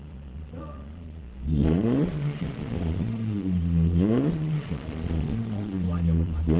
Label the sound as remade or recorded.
remade